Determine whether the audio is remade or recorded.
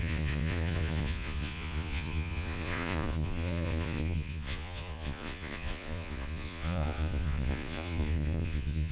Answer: remade